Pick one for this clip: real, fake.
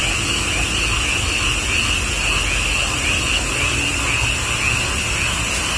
real